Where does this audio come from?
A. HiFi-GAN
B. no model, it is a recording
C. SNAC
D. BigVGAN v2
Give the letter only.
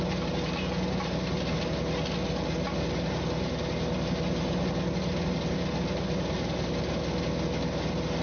B